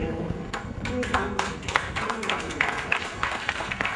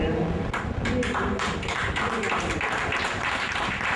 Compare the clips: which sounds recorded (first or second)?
second